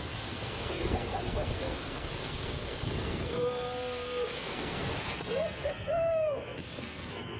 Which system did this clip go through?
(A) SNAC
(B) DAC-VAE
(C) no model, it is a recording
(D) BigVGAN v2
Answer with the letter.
A